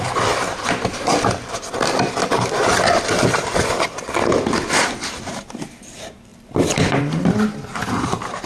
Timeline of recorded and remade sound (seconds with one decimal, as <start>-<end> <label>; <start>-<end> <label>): 0.0-6.3 recorded; 6.3-7.0 remade; 7.0-7.8 recorded; 7.8-8.5 remade